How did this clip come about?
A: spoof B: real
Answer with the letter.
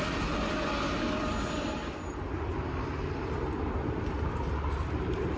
B